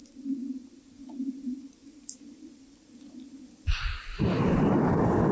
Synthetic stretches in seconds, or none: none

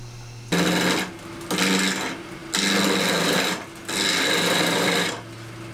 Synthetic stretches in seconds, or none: none

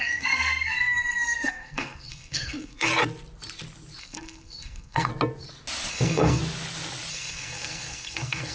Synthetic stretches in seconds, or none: 0.0-2.9 (codec, SNAC); 4.0-5.1; 5.9-6.4; 7.1-8.5

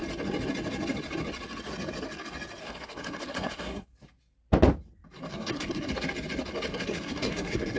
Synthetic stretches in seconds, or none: 2.6-3.9 (codec, SNAC); 5.3-5.9; 6.7-7.8

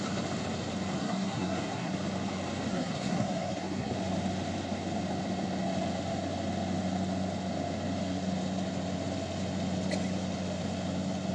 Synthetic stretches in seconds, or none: 1.0-1.9 (codec, SNAC); 2.7-3.9